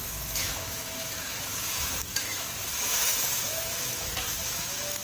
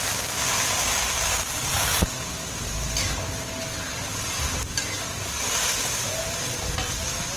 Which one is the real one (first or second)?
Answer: second